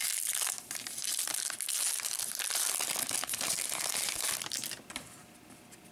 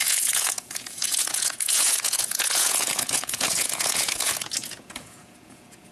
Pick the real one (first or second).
first